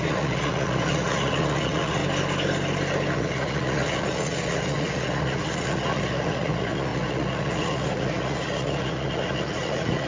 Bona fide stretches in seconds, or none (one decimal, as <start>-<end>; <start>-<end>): 2.0-3.1